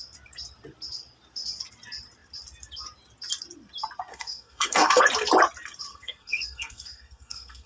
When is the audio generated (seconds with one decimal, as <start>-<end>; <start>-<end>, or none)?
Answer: 4.1-5.0; 5.9-7.7

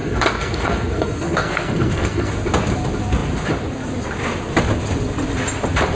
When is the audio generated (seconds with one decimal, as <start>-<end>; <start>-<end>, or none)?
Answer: 0.0-2.3

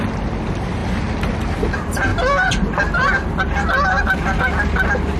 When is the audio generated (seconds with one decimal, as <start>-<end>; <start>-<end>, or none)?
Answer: none

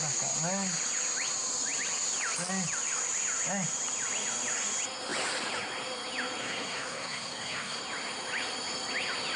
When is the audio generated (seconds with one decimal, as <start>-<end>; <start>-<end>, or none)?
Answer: 6.4-7.8

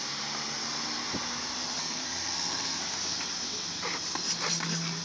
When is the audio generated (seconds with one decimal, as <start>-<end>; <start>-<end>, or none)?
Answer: 1.8-2.8

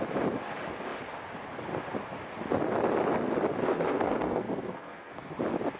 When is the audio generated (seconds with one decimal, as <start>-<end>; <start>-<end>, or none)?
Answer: 3.6-5.3

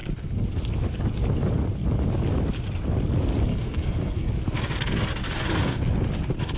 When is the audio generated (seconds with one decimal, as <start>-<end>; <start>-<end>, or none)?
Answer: 3.5-4.3